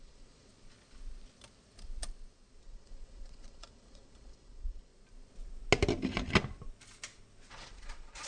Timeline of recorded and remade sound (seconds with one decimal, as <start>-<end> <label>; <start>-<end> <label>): 0.0-0.5 remade; 0.5-2.6 recorded; 2.6-4.9 remade; 4.9-7.5 recorded; 7.5-8.3 remade